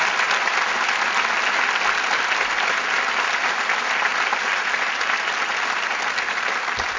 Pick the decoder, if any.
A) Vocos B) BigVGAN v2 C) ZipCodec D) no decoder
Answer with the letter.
D